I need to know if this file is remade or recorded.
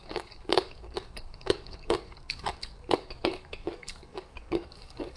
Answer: remade